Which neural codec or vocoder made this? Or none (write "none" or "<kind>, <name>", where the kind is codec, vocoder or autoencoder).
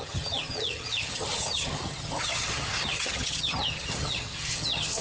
vocoder, HiFi-GAN